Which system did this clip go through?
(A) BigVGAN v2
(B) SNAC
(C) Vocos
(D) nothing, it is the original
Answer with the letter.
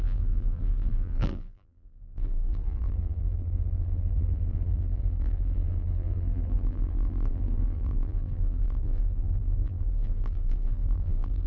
A